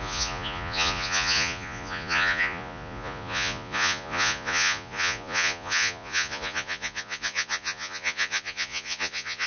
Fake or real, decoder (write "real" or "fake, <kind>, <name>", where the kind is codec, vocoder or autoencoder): fake, vocoder, Vocos